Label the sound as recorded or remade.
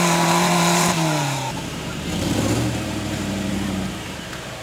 remade